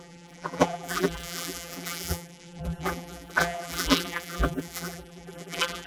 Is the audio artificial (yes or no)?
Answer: yes